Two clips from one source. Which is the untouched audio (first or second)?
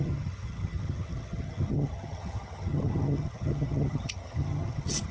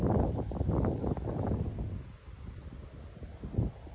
second